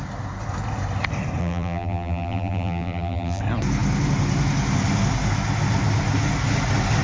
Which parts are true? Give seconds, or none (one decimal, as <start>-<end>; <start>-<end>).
0.0-1.4; 3.4-7.0